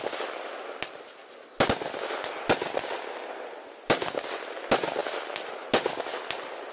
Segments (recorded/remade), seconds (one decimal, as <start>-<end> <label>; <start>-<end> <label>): 0.0-6.7 recorded